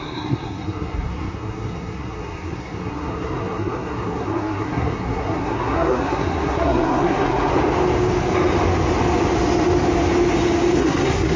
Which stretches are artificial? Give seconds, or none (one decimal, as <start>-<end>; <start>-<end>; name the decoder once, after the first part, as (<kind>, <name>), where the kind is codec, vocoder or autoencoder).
0.0-7.5 (codec, SNAC); 10.8-11.4